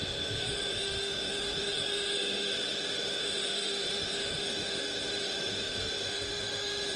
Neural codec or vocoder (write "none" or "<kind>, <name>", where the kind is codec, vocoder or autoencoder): autoencoder, DAC-VAE